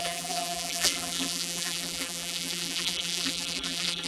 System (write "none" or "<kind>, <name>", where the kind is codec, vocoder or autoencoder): vocoder, BigVGAN v2